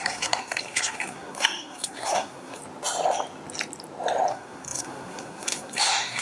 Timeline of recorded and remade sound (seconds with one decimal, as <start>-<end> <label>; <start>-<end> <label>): 0.0-2.6 remade; 2.6-4.3 recorded; 4.3-6.2 remade